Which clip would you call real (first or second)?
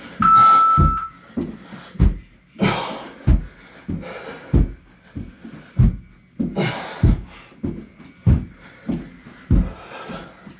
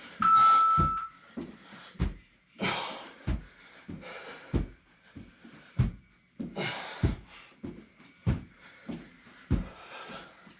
first